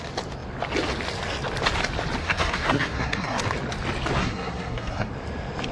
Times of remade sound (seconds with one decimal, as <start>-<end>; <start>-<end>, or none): 2.2-3.4; 4.2-5.1